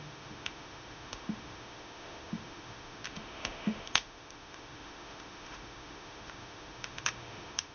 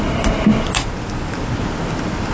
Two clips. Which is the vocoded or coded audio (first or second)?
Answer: first